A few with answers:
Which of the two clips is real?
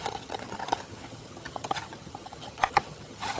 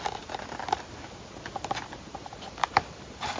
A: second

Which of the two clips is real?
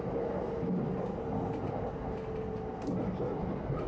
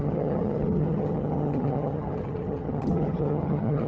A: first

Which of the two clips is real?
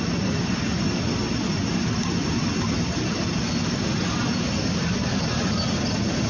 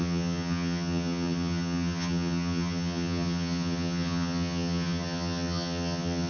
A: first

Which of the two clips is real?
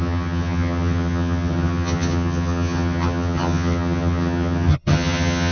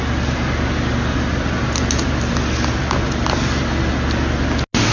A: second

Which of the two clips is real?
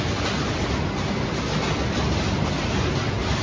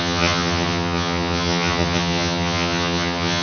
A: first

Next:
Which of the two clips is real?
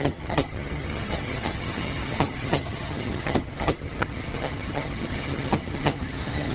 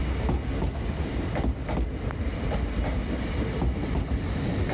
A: second